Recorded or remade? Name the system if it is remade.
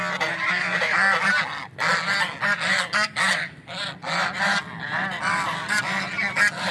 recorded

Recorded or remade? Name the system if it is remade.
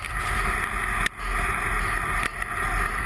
recorded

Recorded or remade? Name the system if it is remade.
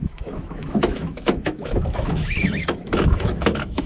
remade, autoencoder, DAC-VAE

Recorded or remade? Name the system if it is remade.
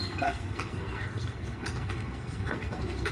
remade, codec, SNAC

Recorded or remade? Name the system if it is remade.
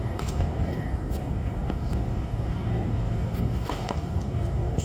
remade, codec, DAC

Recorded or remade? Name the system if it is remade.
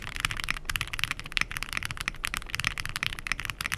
recorded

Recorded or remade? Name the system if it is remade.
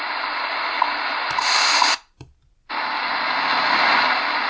recorded